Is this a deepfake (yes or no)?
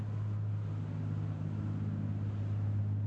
no